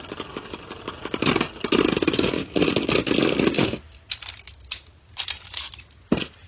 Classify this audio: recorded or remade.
recorded